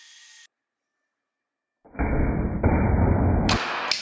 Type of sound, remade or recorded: recorded